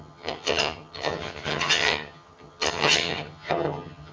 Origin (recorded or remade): remade